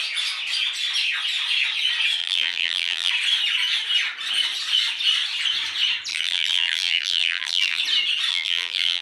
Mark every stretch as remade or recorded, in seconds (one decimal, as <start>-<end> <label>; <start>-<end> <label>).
0.0-2.2 recorded; 2.2-3.1 remade; 3.1-6.1 recorded; 6.1-7.8 remade; 7.8-8.3 recorded; 8.3-9.0 remade